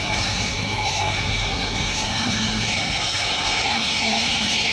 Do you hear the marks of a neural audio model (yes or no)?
yes